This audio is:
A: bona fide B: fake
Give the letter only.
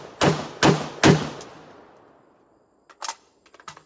A